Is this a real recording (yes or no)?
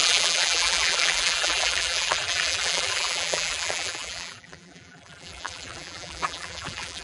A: no